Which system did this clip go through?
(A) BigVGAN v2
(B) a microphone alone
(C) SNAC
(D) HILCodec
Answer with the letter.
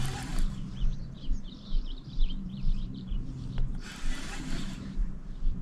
A